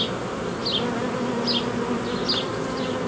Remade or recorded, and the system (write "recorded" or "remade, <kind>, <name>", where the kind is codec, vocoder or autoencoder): recorded